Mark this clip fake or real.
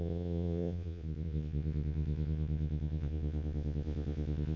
fake